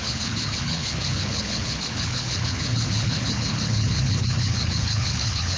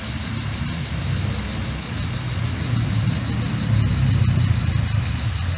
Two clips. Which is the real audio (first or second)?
second